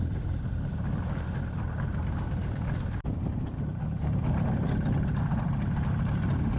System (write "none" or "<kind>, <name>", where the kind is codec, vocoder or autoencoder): none